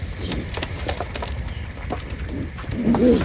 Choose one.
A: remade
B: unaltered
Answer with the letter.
A